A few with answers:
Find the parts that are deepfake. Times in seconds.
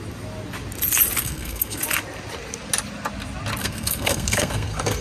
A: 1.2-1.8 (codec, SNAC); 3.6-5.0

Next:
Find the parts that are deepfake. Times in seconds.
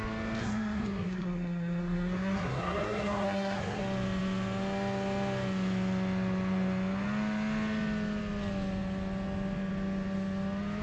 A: 0.4-3.8 (codec, SNAC)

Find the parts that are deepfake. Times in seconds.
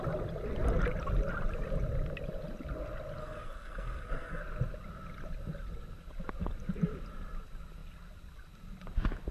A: 3.2-4.4 (codec, SNAC)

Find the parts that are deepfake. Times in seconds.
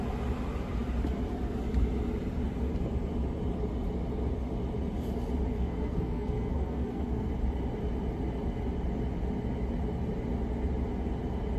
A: 5.5-7.3 (codec, SNAC)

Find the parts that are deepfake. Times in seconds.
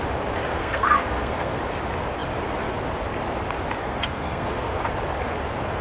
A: 0.5-1.6 (codec, SNAC); 3.8-4.9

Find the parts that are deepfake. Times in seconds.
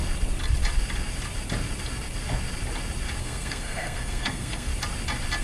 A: 3.2-4.7 (codec, SNAC)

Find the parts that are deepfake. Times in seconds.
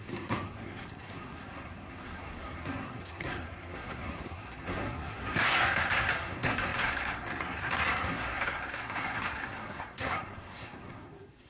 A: 0.0-11.5 (codec, SNAC)